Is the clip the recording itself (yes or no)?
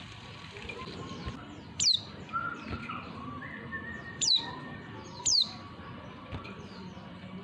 no